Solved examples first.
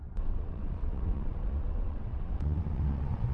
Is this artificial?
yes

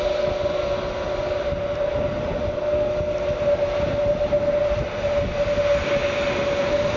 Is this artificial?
no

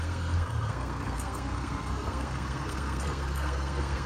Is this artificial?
yes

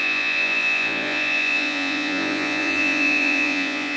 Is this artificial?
yes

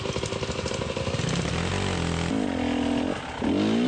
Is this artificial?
no